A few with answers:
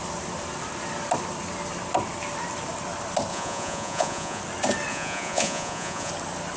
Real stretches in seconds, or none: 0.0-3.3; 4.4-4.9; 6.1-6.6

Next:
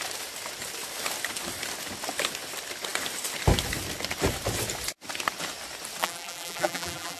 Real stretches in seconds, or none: 0.0-6.0

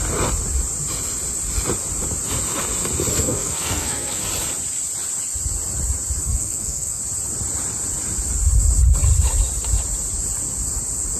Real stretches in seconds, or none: 0.0-3.1; 4.2-6.2; 7.0-11.2

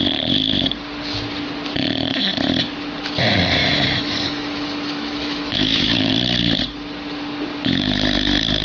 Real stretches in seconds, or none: 0.0-3.6; 6.1-8.6